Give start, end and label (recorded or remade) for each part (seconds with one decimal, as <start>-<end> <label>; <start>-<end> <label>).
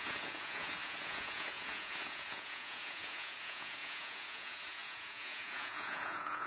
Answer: 0.0-6.5 remade